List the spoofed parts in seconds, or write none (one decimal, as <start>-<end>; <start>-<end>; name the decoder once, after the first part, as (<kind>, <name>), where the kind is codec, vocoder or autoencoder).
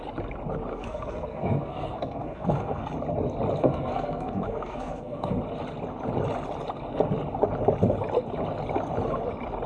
0.7-2.9 (codec, SNAC); 3.6-5.4